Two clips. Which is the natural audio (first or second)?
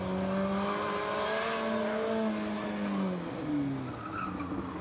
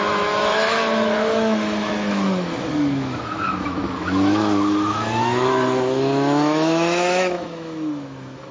first